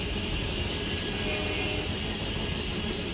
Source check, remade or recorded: recorded